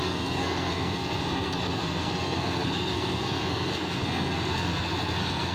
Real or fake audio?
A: fake